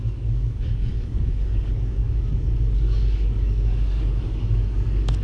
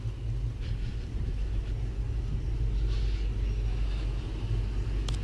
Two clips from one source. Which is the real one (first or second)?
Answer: second